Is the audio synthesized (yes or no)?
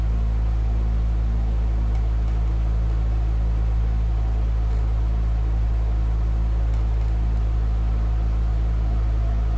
no